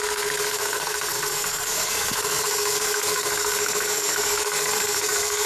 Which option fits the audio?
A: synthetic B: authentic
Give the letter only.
A